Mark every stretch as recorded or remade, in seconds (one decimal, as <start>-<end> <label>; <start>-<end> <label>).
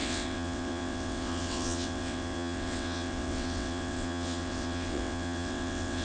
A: 0.0-6.0 remade